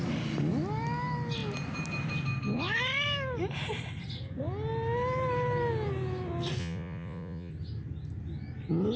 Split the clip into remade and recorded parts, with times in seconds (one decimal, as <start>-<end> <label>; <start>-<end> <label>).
0.0-6.6 recorded; 6.6-7.5 remade; 7.5-9.0 recorded